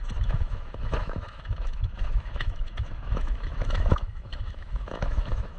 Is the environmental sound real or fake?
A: fake